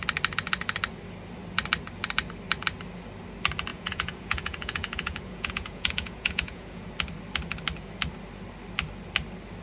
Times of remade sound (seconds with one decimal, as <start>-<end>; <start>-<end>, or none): 3.7-6.9